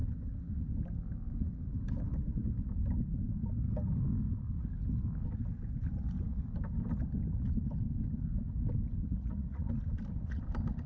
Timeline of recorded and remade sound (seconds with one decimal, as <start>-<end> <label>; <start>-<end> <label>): 0.0-9.0 recorded; 9.0-9.7 remade; 9.7-10.9 recorded